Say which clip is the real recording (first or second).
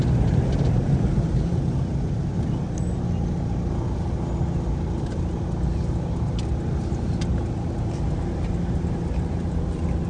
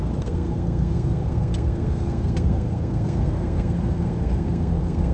first